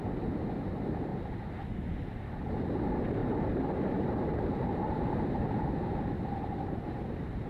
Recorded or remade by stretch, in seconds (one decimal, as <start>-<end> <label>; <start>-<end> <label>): 0.0-1.1 recorded; 1.1-2.4 remade; 2.4-3.2 recorded; 3.2-7.5 remade